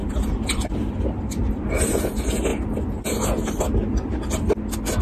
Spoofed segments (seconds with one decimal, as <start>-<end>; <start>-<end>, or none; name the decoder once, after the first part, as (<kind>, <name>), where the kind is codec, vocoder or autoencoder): 0.0-1.5 (vocoder, BigVGAN v2)